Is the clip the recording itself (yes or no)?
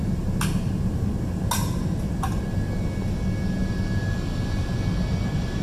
yes